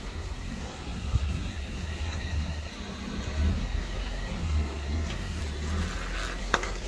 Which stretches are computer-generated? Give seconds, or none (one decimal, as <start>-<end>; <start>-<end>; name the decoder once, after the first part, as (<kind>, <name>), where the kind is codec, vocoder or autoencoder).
0.0-2.7 (codec, SNAC); 3.5-5.4; 6.4-6.9